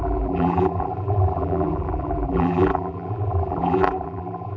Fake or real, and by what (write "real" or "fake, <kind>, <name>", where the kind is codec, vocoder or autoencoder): fake, vocoder, BigVGAN v2